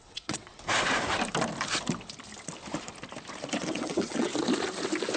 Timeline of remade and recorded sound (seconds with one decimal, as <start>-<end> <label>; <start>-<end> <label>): 0.0-0.5 remade; 0.5-3.6 recorded; 3.6-4.3 remade; 4.3-5.2 recorded